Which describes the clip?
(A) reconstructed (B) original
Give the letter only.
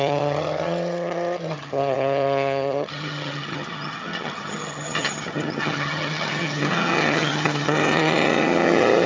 A